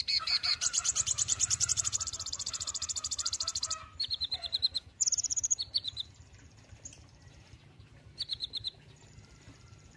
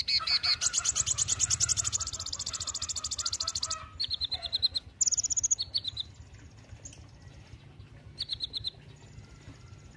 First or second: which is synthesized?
first